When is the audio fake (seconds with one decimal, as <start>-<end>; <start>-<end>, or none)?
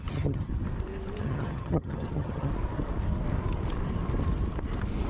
0.0-0.5; 1.2-2.5